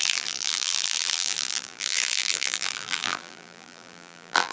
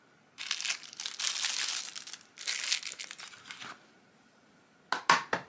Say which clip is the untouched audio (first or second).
second